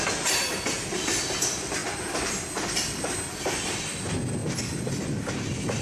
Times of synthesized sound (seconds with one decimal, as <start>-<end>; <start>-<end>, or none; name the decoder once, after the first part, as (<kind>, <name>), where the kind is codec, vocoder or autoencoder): none